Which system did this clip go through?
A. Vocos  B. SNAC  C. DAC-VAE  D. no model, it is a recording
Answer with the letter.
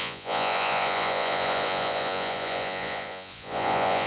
A